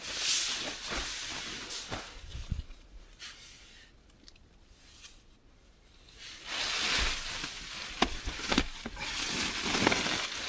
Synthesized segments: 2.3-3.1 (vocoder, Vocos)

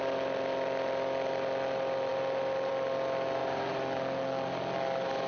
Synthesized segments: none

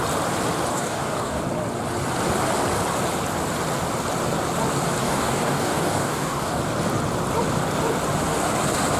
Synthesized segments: 0.7-1.4 (codec, DAC); 5.0-6.6

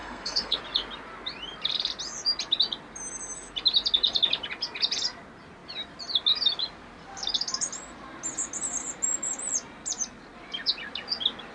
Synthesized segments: 0.0-0.6 (codec, SNAC)